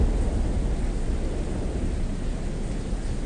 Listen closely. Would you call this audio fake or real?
real